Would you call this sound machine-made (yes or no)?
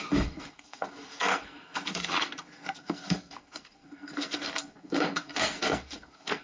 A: yes